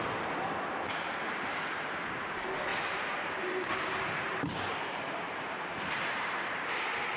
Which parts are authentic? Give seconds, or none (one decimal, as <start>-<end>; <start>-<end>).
0.0-2.7